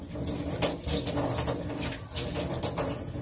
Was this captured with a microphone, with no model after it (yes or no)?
yes